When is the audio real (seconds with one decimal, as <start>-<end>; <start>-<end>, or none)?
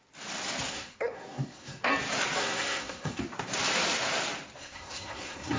0.0-0.7; 1.9-2.4; 3.2-4.6